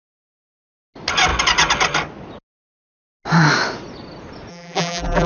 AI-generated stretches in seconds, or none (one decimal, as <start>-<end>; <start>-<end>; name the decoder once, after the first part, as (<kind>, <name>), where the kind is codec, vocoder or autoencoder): 4.5-5.3 (vocoder, BigVGAN v2)